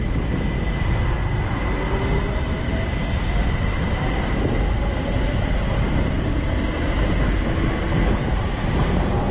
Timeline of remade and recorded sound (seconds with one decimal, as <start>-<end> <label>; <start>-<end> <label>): 0.0-3.0 recorded; 3.0-4.8 remade; 4.8-9.3 recorded